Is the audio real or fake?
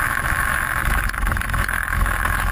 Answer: fake